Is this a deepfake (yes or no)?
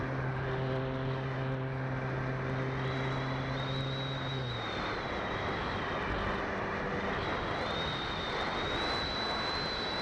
no